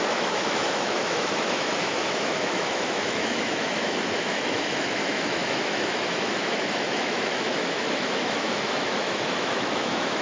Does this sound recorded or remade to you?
remade